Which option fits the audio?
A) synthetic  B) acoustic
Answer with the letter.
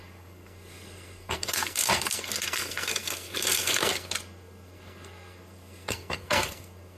A